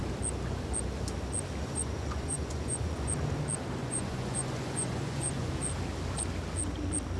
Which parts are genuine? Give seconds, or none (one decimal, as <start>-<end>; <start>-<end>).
0.0-1.6; 3.1-3.8; 5.5-7.2